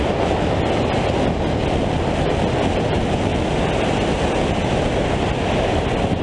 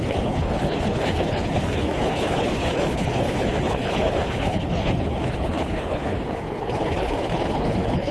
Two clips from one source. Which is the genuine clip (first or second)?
first